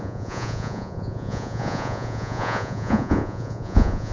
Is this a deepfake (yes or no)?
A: yes